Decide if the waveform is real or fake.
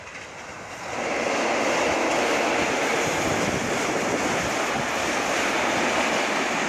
real